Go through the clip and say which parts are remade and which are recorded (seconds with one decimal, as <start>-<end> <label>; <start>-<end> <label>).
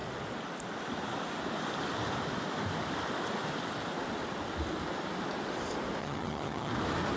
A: 0.0-6.0 recorded; 6.0-6.7 remade; 6.7-7.2 recorded